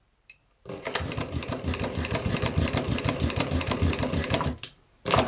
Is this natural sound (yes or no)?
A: no